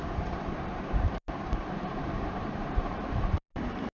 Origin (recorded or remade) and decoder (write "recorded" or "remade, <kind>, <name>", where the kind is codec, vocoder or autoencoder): remade, vocoder, BigVGAN v2